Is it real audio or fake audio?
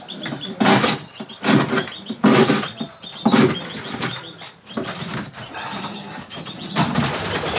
fake